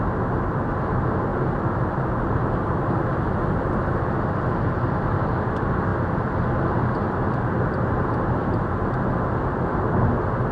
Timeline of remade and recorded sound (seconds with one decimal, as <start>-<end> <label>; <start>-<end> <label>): 0.0-1.3 recorded; 1.3-3.2 remade; 3.2-10.5 recorded